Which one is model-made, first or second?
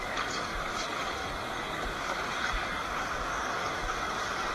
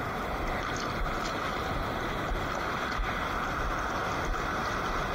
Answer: first